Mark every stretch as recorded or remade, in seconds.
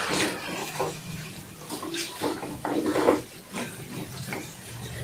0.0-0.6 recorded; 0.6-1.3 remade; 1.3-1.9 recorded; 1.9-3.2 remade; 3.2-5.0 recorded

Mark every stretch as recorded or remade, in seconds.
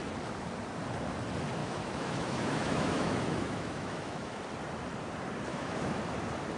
0.0-1.6 recorded; 1.6-4.4 remade; 4.4-5.5 recorded; 5.5-6.0 remade; 6.0-6.6 recorded